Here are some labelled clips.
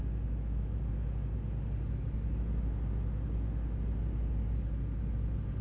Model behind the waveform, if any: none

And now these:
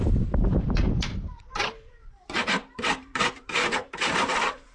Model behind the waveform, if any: vocoder, BigVGAN v2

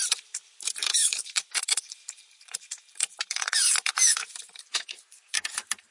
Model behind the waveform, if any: vocoder, BigVGAN v2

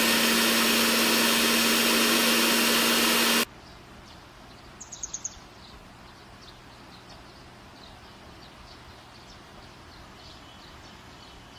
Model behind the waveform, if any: none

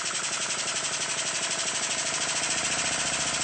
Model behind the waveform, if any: vocoder, BigVGAN v2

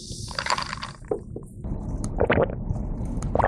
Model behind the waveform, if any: vocoder, BigVGAN v2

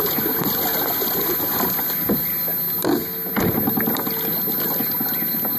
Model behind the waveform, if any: none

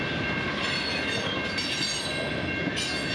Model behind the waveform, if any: none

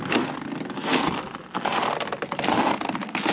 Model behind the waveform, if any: none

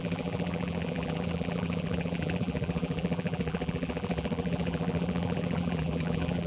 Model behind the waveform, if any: vocoder, BigVGAN v2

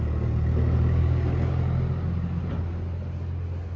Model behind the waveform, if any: none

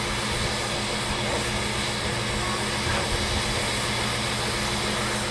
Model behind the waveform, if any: none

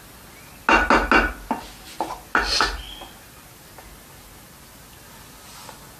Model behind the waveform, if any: none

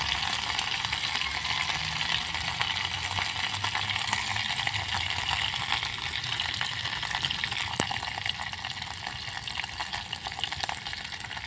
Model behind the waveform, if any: none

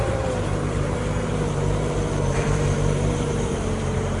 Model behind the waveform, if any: vocoder, BigVGAN v2